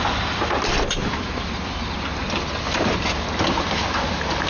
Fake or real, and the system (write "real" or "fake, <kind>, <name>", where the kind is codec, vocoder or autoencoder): fake, vocoder, BigVGAN v2